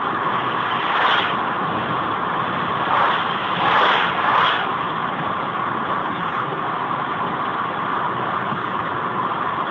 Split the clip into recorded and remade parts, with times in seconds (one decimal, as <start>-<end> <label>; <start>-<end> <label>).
0.0-6.0 recorded; 6.0-6.6 remade; 6.6-8.4 recorded; 8.4-8.9 remade; 8.9-9.7 recorded